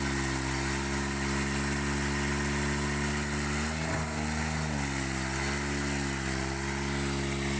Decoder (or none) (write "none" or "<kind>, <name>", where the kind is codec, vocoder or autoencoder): none